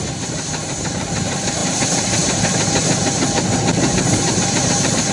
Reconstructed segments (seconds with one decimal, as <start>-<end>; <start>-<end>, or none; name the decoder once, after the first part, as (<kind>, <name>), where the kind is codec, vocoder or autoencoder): 0.0-5.1 (vocoder, BigVGAN v2)